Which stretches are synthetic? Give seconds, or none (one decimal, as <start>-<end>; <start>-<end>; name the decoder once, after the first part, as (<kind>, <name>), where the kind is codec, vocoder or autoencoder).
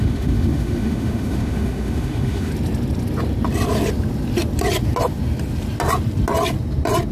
0.0-2.5 (autoencoder, DAC-VAE)